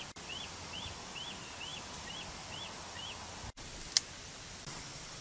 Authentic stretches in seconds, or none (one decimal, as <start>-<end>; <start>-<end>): 0.0-5.2